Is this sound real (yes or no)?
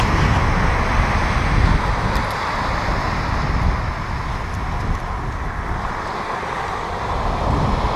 yes